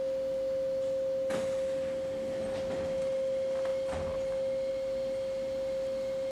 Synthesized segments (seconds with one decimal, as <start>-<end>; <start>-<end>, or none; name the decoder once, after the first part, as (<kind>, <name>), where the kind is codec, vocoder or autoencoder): none